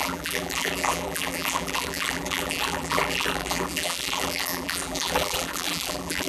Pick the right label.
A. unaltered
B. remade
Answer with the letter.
B